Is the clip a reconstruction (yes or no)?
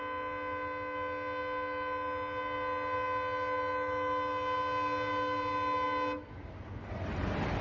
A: no